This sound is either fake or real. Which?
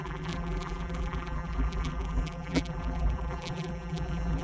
fake